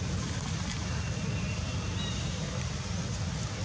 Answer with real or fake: real